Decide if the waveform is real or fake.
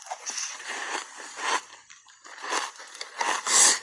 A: real